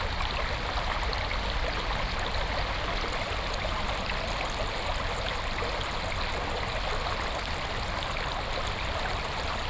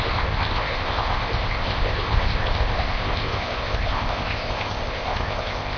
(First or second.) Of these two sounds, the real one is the first